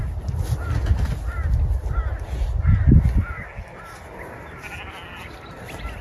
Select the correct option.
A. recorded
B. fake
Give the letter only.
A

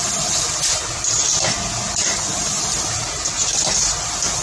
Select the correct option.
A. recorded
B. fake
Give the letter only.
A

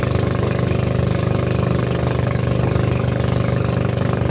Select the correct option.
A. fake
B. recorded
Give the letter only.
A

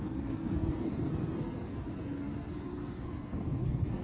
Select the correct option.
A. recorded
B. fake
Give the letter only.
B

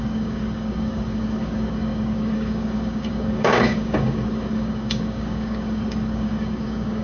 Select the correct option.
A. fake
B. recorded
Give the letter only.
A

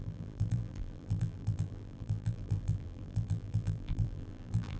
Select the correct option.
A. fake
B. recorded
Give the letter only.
A